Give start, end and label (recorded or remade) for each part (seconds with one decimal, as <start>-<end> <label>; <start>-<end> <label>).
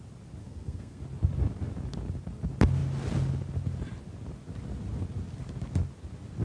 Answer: 0.0-0.4 recorded; 0.4-1.0 remade; 1.0-6.4 recorded